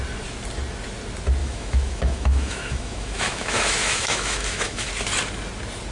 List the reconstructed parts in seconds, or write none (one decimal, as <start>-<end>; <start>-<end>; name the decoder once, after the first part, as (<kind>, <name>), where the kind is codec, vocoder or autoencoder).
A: 1.4-4.9 (autoencoder, DAC-VAE)